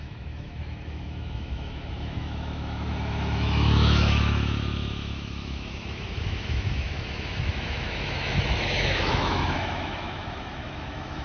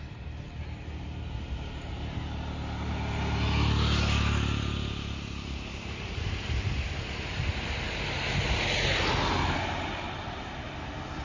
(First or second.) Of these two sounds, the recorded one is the second